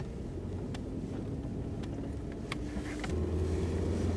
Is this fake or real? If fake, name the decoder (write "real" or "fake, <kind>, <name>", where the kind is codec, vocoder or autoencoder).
real